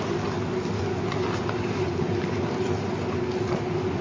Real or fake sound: real